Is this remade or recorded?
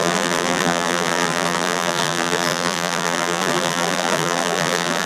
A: remade